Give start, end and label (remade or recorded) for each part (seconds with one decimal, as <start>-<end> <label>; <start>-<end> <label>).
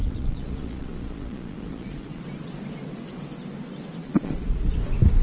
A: 0.0-2.2 remade; 2.2-4.0 recorded; 4.0-4.8 remade; 4.8-5.2 recorded